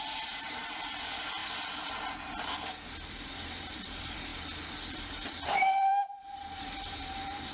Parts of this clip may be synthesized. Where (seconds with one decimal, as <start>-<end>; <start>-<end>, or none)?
0.0-1.4; 3.2-5.9; 6.6-7.5